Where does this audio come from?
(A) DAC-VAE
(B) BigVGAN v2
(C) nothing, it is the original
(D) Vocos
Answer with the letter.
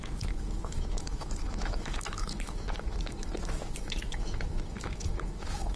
A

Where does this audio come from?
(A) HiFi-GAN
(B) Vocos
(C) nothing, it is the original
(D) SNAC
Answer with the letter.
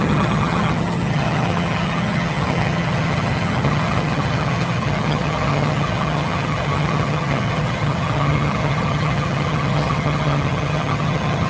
A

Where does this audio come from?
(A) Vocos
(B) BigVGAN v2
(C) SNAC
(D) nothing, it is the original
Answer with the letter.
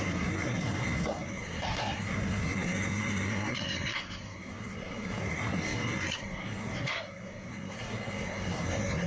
C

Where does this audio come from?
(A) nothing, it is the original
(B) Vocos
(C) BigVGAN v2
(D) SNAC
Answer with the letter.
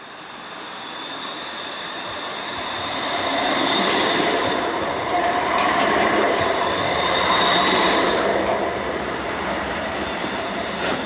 C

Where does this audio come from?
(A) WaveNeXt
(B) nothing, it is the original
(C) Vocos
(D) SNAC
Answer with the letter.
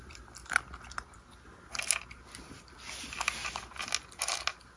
B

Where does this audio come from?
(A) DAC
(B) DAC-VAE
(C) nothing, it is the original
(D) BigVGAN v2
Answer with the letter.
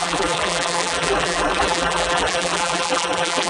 D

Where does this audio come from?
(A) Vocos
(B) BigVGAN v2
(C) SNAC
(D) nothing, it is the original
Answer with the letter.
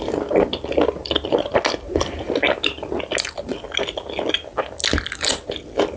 D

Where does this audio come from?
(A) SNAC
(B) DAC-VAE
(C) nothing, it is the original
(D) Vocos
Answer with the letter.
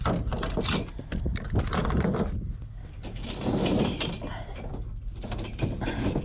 C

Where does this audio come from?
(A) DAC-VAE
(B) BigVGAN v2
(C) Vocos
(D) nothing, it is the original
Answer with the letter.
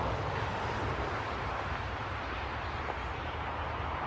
D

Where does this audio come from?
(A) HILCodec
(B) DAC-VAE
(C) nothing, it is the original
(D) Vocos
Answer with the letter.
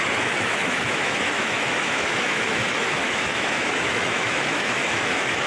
B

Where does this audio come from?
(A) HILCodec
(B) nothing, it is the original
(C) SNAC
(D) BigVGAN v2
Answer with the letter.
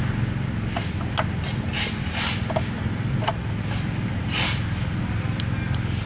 B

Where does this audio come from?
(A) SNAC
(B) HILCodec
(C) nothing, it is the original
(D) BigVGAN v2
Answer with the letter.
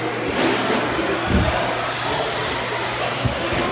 C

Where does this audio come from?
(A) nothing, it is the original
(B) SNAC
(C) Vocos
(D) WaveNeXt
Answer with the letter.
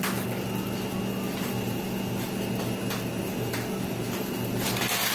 A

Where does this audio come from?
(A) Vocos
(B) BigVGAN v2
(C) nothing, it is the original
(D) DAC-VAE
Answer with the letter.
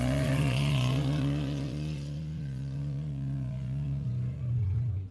A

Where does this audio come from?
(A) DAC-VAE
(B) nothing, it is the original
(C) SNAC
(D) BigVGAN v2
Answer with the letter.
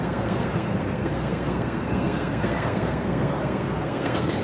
C